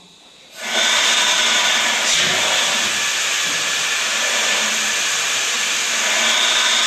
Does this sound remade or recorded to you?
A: recorded